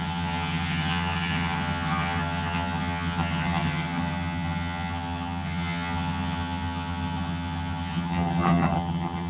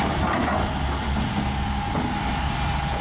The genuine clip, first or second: second